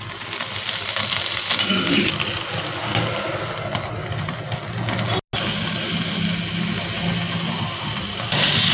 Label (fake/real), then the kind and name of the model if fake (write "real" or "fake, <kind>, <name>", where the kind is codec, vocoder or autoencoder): real